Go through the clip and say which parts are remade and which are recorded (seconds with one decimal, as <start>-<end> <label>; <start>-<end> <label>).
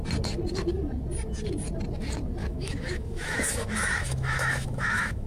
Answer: 0.0-2.4 recorded; 2.4-5.3 remade